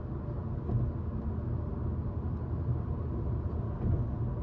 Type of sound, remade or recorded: recorded